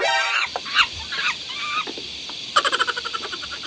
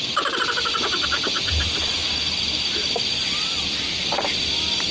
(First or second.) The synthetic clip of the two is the first